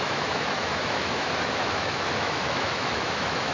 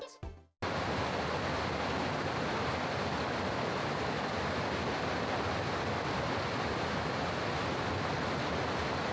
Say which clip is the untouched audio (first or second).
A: second